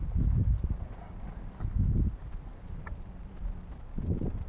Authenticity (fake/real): real